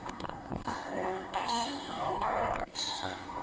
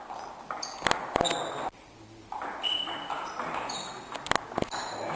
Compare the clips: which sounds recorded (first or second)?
second